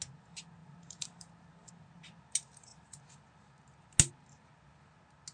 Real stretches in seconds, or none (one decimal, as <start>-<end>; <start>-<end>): 0.0-0.6; 1.7-5.3